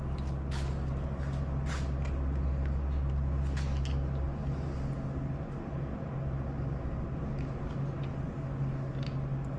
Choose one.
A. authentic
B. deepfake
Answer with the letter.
A